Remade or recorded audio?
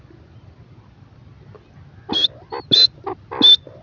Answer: recorded